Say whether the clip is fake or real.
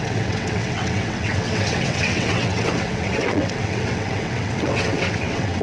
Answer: fake